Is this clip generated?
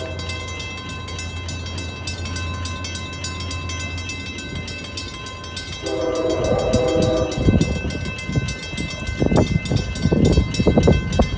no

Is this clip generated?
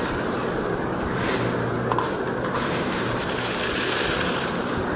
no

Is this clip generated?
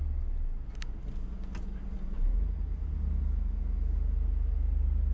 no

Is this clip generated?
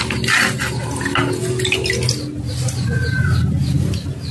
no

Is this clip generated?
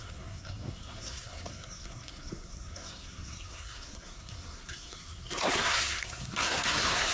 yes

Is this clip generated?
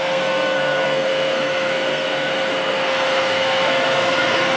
yes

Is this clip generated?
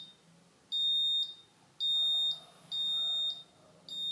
no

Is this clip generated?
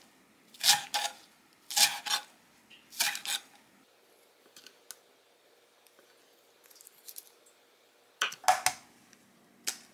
no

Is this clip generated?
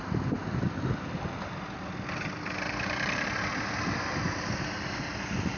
no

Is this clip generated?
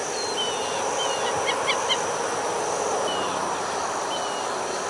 no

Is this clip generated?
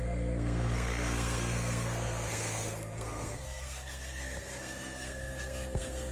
yes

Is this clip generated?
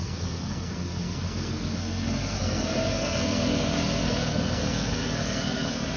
yes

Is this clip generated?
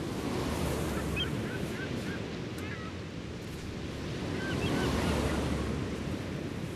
no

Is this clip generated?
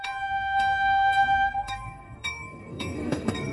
yes